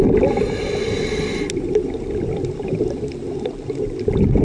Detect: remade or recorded recorded